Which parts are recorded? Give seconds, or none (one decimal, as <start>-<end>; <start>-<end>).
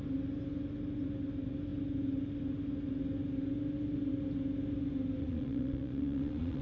0.0-5.2